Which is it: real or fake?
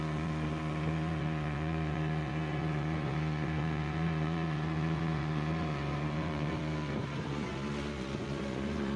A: fake